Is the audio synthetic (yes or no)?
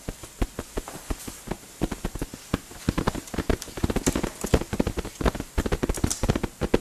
no